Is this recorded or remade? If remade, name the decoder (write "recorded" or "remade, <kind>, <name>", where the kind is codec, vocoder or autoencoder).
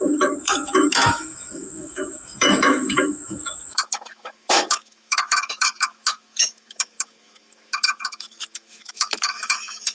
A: remade, autoencoder, DAC-VAE